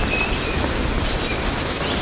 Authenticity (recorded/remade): recorded